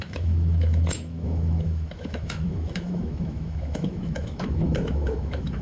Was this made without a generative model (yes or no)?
no